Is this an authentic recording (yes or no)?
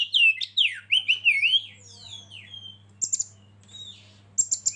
yes